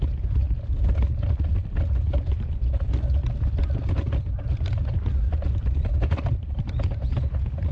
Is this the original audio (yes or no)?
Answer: yes